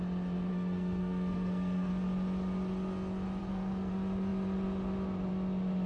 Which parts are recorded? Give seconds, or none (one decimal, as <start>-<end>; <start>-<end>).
0.0-0.5; 1.9-3.4; 3.9-5.9